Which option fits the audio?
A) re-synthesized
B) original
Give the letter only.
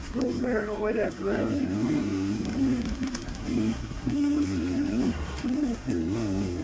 A